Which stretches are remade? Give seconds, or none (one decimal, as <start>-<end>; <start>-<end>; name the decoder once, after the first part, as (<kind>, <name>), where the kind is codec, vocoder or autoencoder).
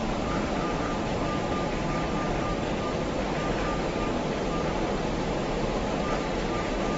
0.0-0.8 (vocoder, BigVGAN v2)